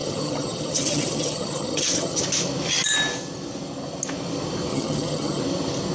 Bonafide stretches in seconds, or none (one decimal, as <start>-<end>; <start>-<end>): 2.2-4.7; 5.4-5.9